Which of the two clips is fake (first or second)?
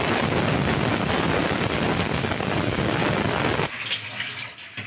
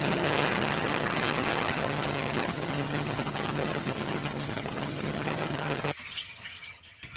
second